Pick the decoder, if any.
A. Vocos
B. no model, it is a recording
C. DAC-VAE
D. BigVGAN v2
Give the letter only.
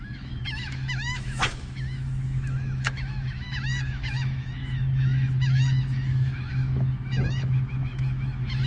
C